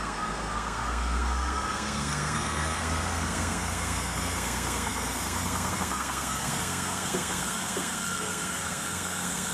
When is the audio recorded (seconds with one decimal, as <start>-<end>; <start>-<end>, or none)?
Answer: none